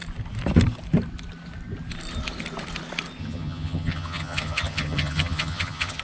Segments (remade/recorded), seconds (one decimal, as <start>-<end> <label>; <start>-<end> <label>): 0.0-3.2 recorded; 3.2-6.0 remade